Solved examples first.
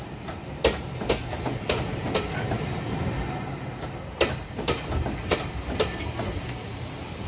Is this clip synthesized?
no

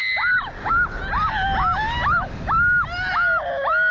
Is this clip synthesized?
no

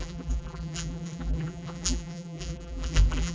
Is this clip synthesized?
yes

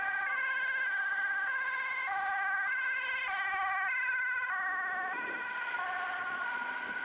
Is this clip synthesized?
no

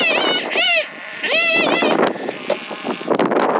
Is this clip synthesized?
no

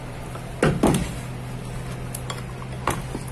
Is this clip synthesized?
no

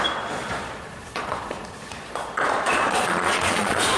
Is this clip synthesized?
yes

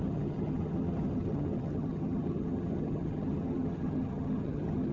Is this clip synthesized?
yes